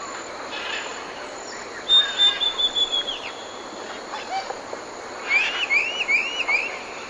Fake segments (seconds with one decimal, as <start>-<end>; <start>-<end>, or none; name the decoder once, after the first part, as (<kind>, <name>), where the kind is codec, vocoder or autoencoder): none

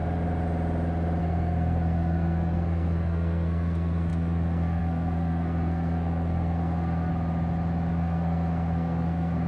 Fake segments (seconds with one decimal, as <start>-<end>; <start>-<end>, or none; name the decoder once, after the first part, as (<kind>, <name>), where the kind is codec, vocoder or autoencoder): 1.2-7.1 (codec, SNAC); 7.9-9.5